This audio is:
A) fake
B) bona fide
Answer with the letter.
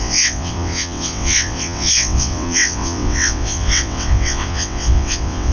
A